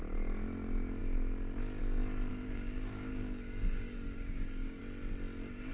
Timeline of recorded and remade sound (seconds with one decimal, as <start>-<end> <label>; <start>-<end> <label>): 0.0-2.3 recorded; 2.3-4.8 remade; 4.8-5.7 recorded